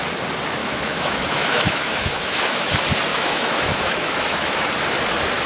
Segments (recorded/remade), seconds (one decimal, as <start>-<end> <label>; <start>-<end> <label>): 0.0-0.6 recorded; 0.6-2.7 remade; 2.7-3.1 recorded; 3.1-4.7 remade; 4.7-5.5 recorded